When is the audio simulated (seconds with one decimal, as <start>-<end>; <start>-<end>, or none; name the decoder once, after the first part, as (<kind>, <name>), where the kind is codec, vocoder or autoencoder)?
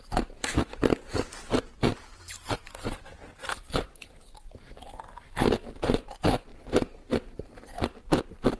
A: none